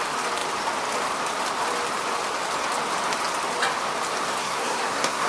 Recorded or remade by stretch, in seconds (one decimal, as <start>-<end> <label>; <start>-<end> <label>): 0.0-4.4 recorded; 4.4-5.3 remade

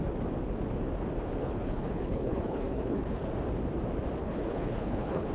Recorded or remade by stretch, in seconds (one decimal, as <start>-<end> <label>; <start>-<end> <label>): 0.0-1.4 recorded; 1.4-3.3 remade; 3.3-4.2 recorded; 4.2-5.3 remade

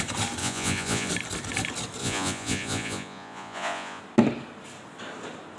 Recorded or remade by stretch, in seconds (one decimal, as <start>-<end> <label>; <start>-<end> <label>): 0.0-0.4 recorded; 0.4-1.1 remade; 1.1-2.0 recorded; 2.0-4.0 remade; 4.0-5.6 recorded

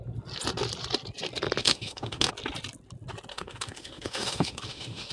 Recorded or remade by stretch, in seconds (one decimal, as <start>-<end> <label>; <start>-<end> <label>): 0.0-1.6 recorded; 1.6-2.3 remade; 2.3-3.3 recorded; 3.3-5.1 remade